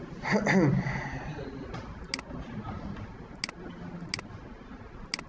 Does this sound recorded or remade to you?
recorded